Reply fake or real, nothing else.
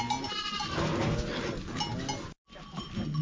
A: real